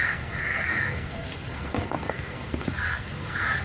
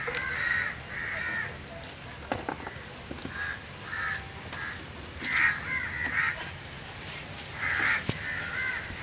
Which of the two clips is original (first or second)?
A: second